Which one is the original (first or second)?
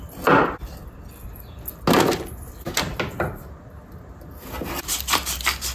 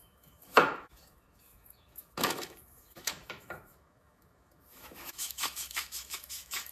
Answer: first